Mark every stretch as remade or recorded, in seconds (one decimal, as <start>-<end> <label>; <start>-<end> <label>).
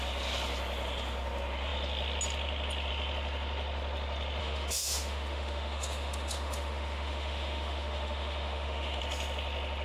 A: 0.0-4.4 recorded; 4.4-9.0 remade; 9.0-9.8 recorded